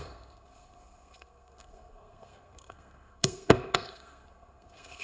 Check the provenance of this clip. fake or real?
fake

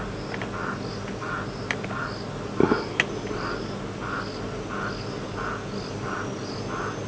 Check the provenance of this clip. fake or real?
real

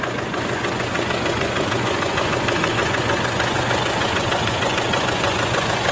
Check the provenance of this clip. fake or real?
fake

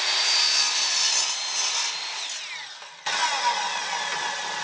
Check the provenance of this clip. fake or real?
real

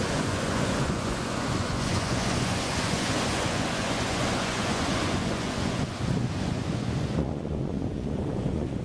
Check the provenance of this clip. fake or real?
fake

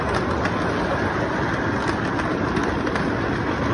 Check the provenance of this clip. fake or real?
real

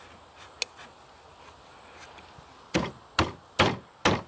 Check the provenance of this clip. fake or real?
real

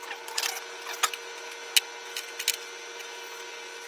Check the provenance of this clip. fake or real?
real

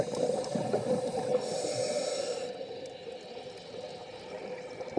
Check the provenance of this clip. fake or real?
real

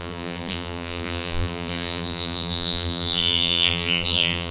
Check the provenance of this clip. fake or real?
fake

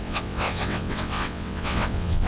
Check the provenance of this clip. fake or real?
fake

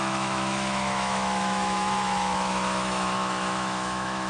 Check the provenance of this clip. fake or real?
fake